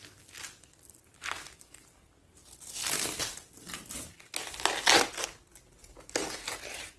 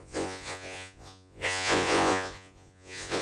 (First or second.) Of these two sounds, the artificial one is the second